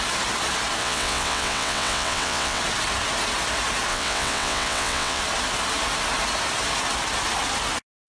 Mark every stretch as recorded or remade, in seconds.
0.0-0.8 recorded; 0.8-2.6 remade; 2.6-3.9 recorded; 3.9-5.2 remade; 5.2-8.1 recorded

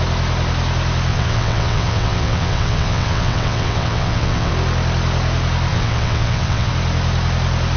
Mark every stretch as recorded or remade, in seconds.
0.0-1.1 recorded; 1.1-4.5 remade; 4.5-5.7 recorded; 5.7-6.7 remade; 6.7-7.8 recorded

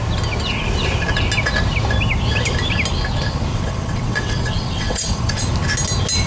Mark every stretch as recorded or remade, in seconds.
0.0-3.5 recorded; 3.5-5.4 remade; 5.4-6.3 recorded

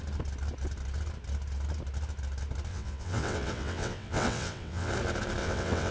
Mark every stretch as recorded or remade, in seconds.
0.0-2.7 recorded; 2.7-4.9 remade; 4.9-5.4 recorded; 5.4-5.9 remade

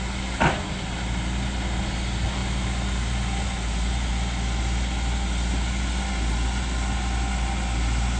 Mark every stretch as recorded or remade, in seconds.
0.0-8.2 recorded

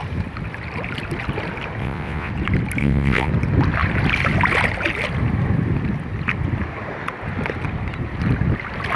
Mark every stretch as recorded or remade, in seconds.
0.0-1.8 recorded; 1.8-2.3 remade; 2.3-2.8 recorded; 2.8-3.3 remade; 3.3-9.0 recorded